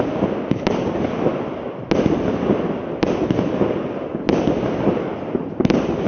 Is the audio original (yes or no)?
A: yes